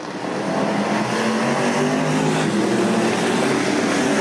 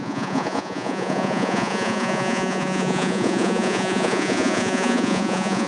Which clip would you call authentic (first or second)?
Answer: first